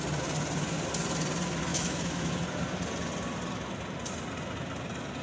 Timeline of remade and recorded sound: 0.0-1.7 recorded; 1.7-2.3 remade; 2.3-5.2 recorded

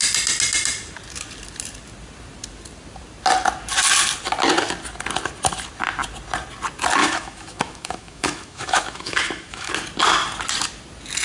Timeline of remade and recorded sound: 0.0-7.0 recorded; 7.0-9.7 remade; 9.7-11.2 recorded